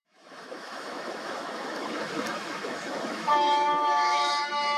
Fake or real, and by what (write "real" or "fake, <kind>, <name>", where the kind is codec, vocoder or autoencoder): fake, autoencoder, DAC-VAE